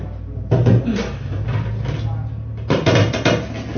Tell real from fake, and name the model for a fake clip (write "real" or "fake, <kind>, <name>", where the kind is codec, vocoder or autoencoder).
real